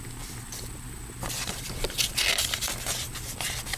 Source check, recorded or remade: recorded